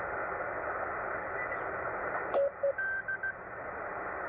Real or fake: real